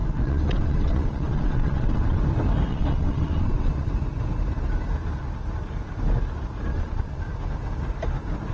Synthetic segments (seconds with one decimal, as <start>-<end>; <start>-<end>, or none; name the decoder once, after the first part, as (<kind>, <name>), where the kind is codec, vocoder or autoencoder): 0.0-2.2 (vocoder, WaveNeXt); 2.7-3.9; 6.7-7.2